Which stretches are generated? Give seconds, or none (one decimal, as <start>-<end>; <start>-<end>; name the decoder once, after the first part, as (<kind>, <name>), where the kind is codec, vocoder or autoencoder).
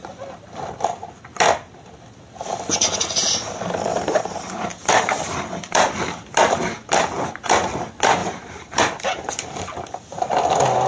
3.9-5.9 (vocoder, BigVGAN v2); 8.2-9.3